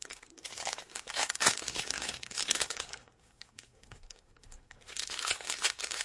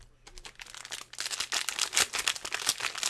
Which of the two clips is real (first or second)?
second